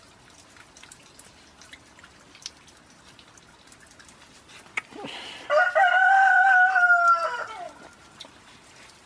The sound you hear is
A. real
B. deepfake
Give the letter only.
A